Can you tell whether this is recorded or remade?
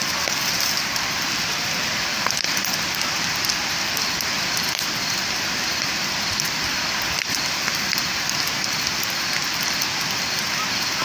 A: remade